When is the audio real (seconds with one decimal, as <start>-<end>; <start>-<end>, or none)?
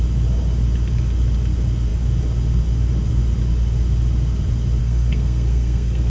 0.0-4.8